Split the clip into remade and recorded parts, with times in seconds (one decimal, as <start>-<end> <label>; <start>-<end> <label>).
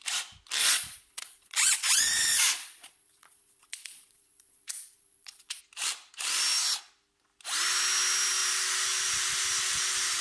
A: 0.0-0.6 recorded; 0.6-5.6 remade; 5.6-10.2 recorded